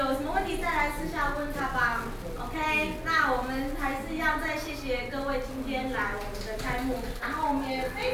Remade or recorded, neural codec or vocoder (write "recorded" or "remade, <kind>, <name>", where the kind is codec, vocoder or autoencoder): recorded